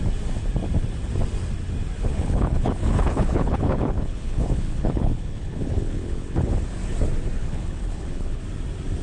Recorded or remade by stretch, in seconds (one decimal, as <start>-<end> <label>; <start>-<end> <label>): 0.0-2.1 recorded; 2.1-6.5 remade; 6.5-7.4 recorded; 7.4-8.4 remade; 8.4-9.0 recorded